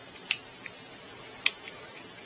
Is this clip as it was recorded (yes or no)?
yes